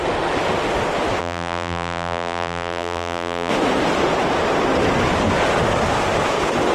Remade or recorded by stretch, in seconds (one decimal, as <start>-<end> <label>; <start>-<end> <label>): 0.0-1.2 recorded; 1.2-3.5 remade; 3.5-6.7 recorded